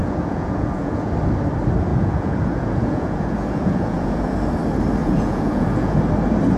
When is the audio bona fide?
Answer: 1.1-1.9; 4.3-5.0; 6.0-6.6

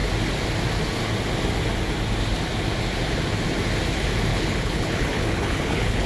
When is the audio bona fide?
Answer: 0.0-4.3

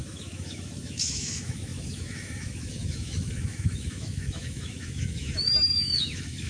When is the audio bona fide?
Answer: none

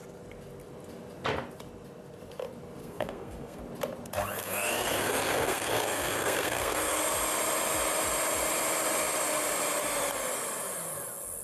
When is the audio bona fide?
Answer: 0.0-2.8; 3.6-4.4; 7.0-11.4

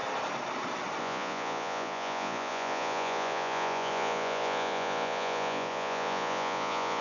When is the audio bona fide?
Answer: 0.0-1.0

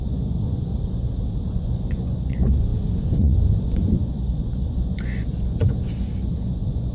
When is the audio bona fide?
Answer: 0.7-1.5